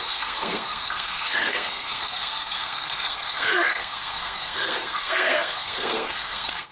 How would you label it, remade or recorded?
remade